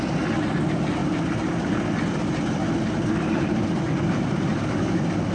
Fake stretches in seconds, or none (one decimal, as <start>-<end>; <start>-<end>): none